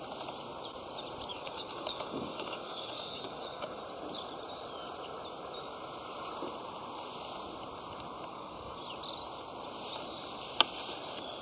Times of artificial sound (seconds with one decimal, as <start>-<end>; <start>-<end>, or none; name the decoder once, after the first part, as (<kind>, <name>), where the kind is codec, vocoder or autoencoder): 1.3-3.8 (codec, DAC); 8.3-8.8